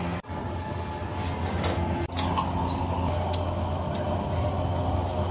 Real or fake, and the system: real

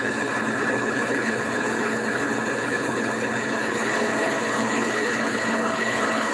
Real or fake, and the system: fake, codec, HILCodec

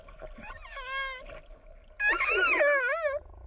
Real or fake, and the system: real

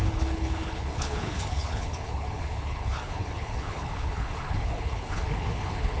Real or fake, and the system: fake, codec, HILCodec